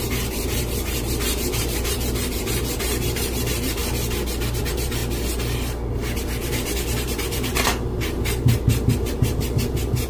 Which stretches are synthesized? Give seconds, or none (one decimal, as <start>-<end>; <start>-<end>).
0.0-3.8; 4.6-5.0; 5.9-10.1